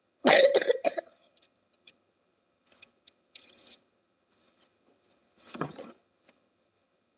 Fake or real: fake